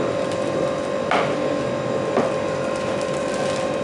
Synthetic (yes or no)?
no